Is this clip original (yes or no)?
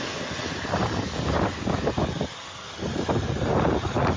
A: yes